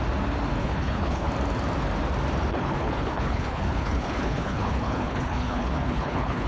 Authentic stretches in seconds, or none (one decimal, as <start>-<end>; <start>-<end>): 0.0-0.6; 1.3-2.5